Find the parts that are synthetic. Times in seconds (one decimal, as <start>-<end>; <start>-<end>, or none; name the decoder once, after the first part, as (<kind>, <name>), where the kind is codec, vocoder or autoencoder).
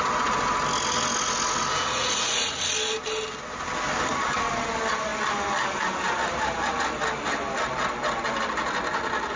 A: 1.7-2.6 (vocoder, Vocos)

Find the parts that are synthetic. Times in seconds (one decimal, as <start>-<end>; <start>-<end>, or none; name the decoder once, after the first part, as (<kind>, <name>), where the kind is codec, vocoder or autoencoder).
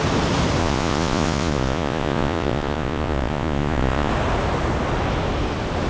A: 0.6-4.1 (vocoder, Vocos)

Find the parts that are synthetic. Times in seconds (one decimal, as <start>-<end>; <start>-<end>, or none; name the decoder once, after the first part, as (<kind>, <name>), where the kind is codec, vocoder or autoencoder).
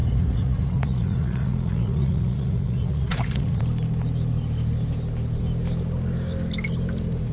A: 0.0-3.6 (vocoder, Vocos)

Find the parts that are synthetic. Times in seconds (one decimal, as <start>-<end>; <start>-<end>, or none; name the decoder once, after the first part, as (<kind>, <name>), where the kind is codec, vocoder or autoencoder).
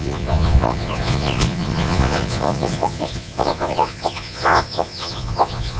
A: 0.0-5.8 (vocoder, Vocos)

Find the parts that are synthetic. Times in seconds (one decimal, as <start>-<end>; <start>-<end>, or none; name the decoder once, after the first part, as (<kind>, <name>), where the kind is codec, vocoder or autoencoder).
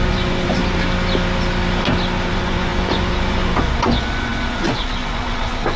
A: 0.0-0.6 (vocoder, Vocos); 2.3-5.8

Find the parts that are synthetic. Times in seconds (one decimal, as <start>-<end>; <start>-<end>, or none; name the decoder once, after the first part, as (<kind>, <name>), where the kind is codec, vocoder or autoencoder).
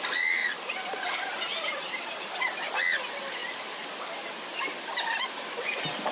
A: none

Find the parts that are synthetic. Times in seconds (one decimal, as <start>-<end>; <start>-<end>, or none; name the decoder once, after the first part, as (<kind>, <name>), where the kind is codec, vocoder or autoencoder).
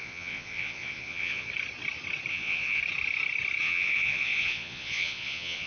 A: 0.0-1.5 (vocoder, Vocos); 2.3-2.8; 3.6-5.7